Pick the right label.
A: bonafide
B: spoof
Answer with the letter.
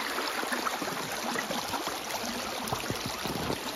A